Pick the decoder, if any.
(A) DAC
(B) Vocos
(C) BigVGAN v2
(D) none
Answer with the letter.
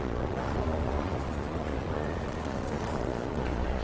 B